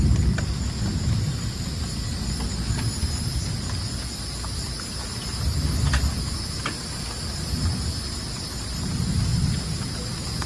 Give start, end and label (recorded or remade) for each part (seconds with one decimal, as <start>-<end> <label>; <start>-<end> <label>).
0.0-10.5 recorded